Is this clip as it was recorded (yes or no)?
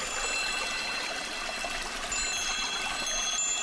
yes